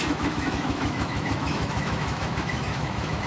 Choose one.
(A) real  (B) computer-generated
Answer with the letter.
B